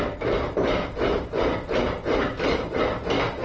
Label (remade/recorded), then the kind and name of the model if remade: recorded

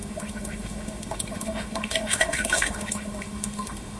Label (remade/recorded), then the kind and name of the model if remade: remade, autoencoder, DAC-VAE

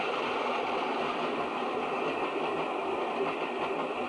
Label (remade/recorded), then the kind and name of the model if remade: recorded